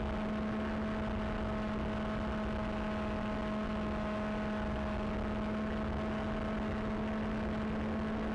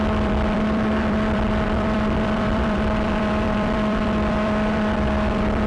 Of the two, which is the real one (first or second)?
first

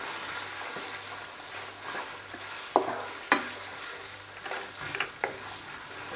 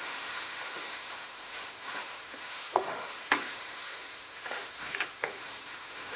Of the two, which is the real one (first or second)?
first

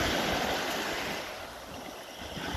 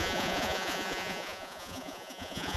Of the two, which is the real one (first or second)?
first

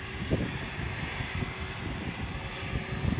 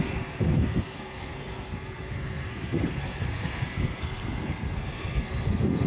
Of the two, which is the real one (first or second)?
first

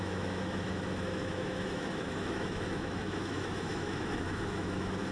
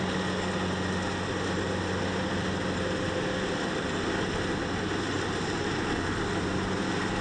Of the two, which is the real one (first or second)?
second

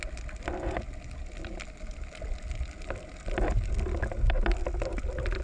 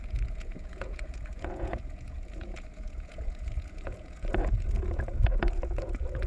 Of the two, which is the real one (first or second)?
first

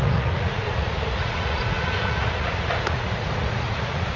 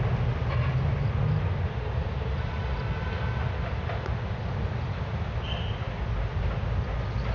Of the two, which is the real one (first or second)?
second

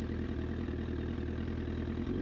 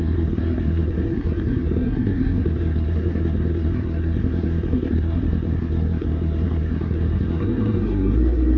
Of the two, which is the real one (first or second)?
first